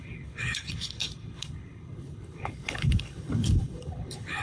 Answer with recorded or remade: remade